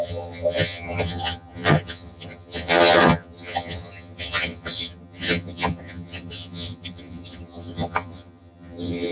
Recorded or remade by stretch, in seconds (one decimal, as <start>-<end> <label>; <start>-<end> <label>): 0.0-9.1 remade